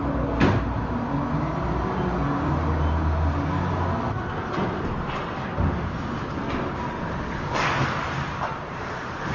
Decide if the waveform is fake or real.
real